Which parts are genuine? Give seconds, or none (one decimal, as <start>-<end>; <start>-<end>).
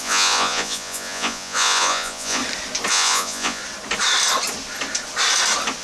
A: 2.4-2.9; 3.6-5.8